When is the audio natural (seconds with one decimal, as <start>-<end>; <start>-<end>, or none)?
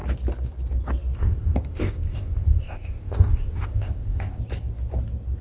0.0-1.2; 4.4-5.4